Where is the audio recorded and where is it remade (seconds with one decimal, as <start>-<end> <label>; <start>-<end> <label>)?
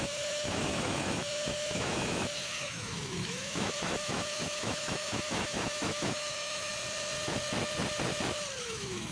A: 0.0-6.7 remade; 6.7-8.6 recorded; 8.6-9.1 remade